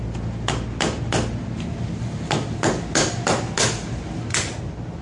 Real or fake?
real